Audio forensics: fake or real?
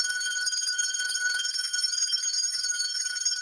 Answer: fake